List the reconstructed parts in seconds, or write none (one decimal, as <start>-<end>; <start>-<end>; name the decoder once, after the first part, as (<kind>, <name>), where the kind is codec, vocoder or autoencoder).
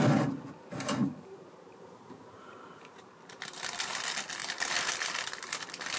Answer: 1.0-3.6 (vocoder, BigVGAN v2); 4.4-4.9